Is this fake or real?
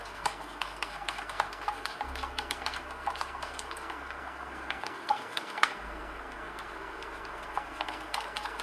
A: fake